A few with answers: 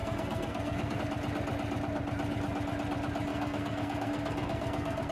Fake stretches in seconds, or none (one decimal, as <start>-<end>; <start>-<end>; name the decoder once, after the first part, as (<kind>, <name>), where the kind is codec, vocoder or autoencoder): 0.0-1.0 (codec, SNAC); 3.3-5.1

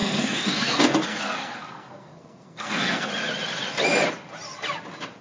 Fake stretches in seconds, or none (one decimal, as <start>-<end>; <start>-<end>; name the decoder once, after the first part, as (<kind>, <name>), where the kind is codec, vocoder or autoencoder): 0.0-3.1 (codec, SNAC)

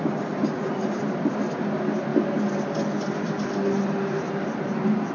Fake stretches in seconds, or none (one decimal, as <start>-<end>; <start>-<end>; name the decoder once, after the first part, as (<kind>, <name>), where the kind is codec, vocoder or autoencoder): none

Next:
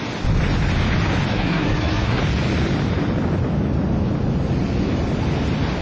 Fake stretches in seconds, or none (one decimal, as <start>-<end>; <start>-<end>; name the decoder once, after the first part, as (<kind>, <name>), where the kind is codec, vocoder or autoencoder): 1.3-2.2 (codec, SNAC)

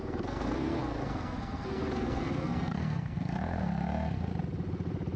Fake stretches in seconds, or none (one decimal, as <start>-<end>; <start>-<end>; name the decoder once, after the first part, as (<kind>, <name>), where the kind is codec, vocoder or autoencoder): 0.0-4.3 (codec, SNAC)